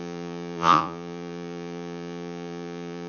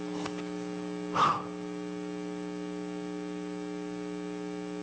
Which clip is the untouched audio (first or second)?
second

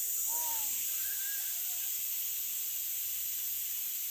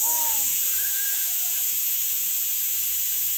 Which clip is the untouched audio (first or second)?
first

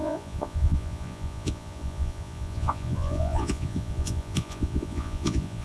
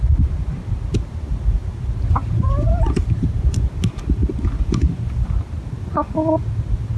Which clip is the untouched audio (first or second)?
second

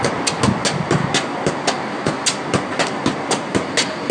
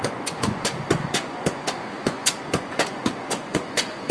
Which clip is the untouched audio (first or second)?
first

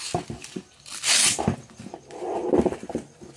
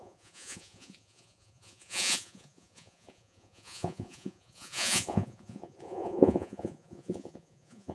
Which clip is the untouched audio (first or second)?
first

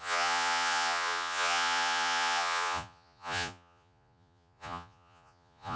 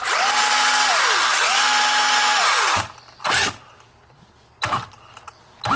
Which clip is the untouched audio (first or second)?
second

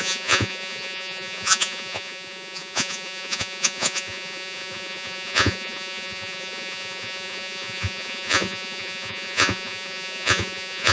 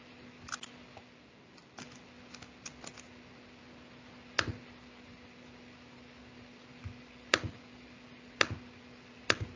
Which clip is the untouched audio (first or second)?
second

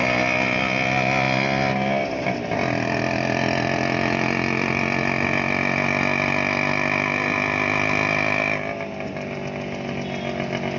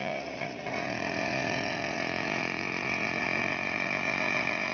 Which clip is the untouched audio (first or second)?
first